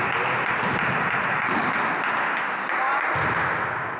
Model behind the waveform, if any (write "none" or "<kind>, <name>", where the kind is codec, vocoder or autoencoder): none